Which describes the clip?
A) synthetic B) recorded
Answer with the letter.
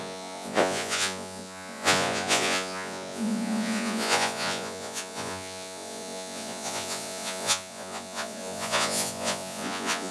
A